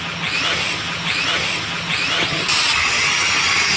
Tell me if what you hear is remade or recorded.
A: recorded